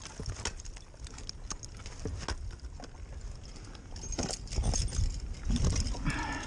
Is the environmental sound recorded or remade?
recorded